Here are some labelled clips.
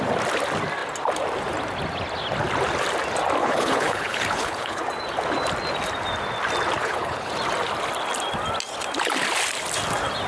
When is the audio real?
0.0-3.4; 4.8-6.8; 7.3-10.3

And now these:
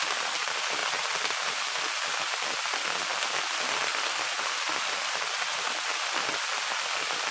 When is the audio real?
0.0-7.3